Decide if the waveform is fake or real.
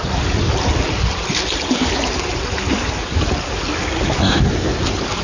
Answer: real